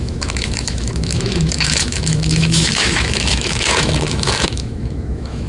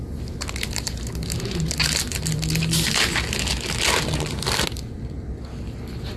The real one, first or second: second